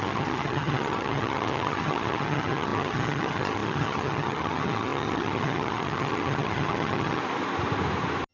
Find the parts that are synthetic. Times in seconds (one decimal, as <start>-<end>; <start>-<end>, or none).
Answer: 0.0-7.2